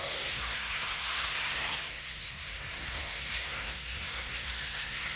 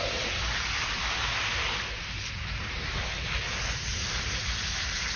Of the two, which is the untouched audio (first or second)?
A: second